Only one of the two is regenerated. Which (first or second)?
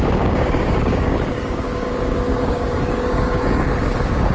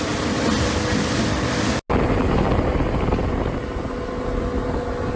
first